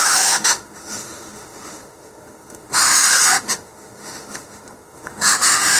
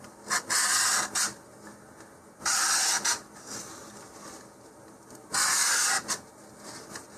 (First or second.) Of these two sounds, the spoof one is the first